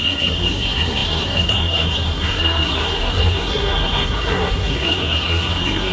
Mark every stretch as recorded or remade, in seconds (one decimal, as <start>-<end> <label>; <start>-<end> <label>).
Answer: 0.0-5.9 remade